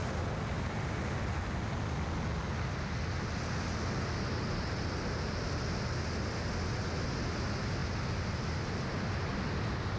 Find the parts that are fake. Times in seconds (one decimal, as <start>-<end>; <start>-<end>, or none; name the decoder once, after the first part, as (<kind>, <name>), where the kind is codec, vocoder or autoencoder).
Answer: none